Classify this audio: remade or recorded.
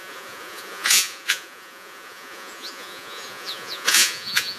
remade